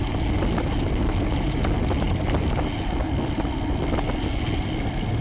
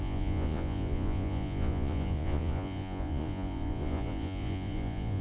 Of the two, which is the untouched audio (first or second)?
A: first